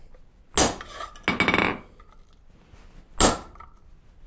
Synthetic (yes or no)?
no